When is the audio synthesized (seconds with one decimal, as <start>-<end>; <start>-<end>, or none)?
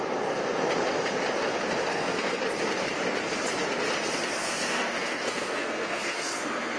1.9-2.4; 4.4-6.8